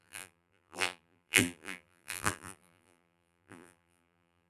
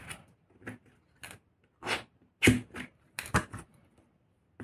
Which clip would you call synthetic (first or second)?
first